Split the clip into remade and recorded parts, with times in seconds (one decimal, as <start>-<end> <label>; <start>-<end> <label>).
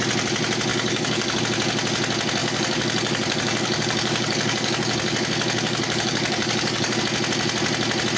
0.0-0.7 recorded; 0.7-1.4 remade; 1.4-2.4 recorded; 2.4-7.0 remade; 7.0-8.2 recorded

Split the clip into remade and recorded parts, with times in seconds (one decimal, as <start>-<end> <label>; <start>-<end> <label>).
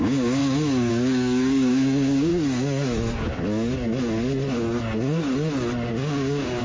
0.0-2.3 remade; 2.3-5.9 recorded; 5.9-6.6 remade